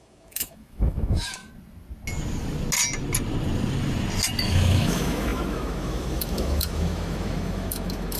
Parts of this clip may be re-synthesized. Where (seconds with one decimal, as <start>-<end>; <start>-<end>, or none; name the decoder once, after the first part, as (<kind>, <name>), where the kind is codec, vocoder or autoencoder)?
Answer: 0.0-1.4 (autoencoder, DAC-VAE); 4.4-8.2